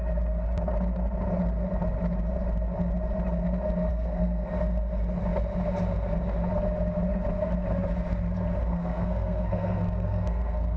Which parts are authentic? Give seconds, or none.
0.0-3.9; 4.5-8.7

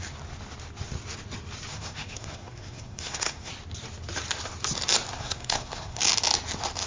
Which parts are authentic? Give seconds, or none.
0.0-1.7; 3.5-5.2; 6.0-6.9